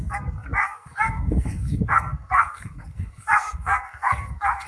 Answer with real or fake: fake